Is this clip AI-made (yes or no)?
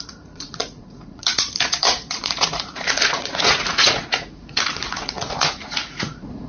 yes